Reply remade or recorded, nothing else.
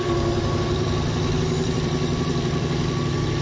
remade